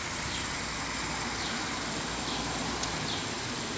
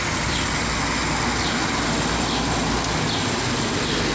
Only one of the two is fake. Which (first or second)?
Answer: first